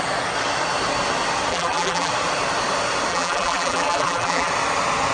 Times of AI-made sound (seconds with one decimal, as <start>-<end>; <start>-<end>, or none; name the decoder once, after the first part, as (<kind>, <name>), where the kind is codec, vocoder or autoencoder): 1.5-2.1 (vocoder, BigVGAN v2); 3.1-4.5